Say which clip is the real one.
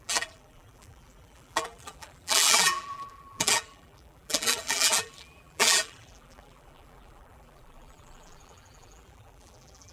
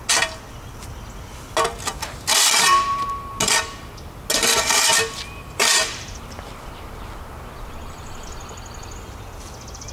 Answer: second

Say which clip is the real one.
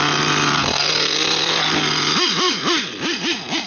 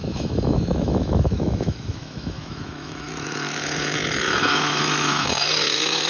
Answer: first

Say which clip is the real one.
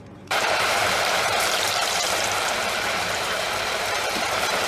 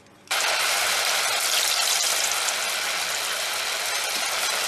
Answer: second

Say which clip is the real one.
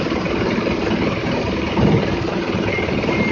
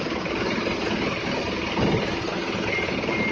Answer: second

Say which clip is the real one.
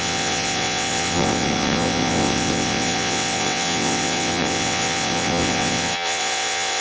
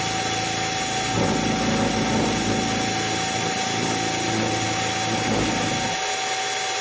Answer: second